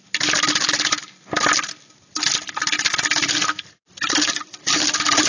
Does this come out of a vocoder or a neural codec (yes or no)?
no